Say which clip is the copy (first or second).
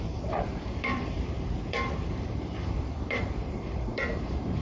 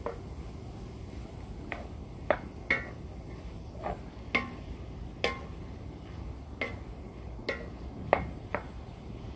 first